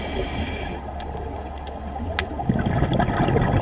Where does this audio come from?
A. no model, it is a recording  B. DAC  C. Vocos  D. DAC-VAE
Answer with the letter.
A